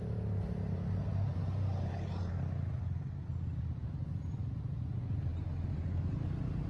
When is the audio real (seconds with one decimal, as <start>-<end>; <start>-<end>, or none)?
0.0-6.7